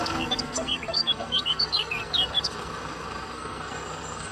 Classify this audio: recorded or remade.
remade